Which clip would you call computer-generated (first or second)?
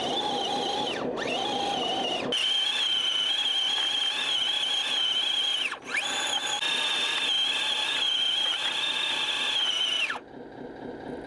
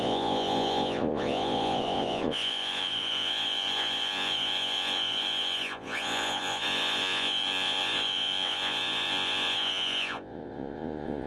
second